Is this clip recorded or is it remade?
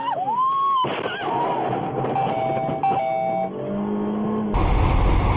recorded